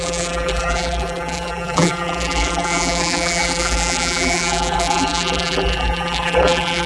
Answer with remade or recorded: remade